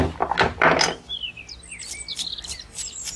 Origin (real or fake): real